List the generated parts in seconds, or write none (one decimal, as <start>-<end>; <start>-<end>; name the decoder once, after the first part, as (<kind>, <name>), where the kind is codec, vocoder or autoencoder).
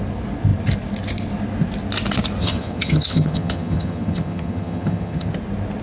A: 2.4-5.3 (vocoder, HiFi-GAN)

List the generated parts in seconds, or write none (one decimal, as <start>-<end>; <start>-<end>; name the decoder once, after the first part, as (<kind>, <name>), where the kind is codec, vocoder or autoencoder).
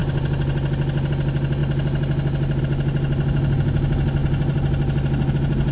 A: none